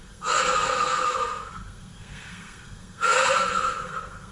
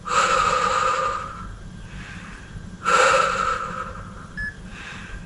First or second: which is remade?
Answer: first